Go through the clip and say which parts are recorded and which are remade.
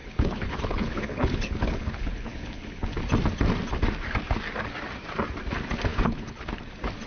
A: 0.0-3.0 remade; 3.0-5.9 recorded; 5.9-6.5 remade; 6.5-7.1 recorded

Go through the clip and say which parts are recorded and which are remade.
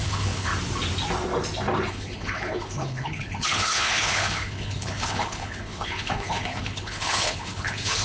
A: 0.0-0.5 remade; 0.5-1.9 recorded; 1.9-8.0 remade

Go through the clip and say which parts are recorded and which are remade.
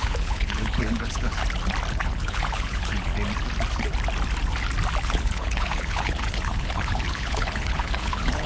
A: 0.0-1.4 remade; 1.4-1.9 recorded; 1.9-3.1 remade; 3.1-5.0 recorded; 5.0-8.5 remade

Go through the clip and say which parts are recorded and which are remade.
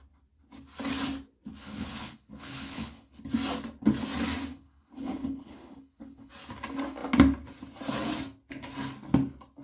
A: 0.0-1.5 recorded; 1.5-3.2 remade; 3.2-4.5 recorded; 4.5-6.3 remade; 6.3-9.6 recorded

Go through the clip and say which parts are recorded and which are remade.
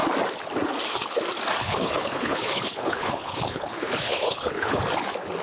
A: 0.0-1.6 recorded; 1.6-4.8 remade; 4.8-5.4 recorded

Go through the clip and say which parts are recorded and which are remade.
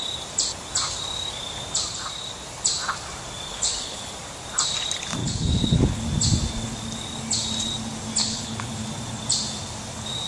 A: 0.0-3.5 recorded; 3.5-4.1 remade; 4.1-5.2 recorded; 5.2-6.0 remade; 6.0-8.2 recorded; 8.2-8.7 remade; 8.7-10.3 recorded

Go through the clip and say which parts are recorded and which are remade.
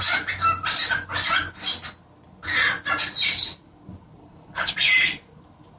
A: 0.0-4.2 recorded; 4.2-4.7 remade; 4.7-5.8 recorded